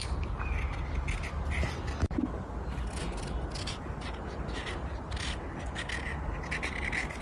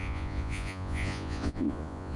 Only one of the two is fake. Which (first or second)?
second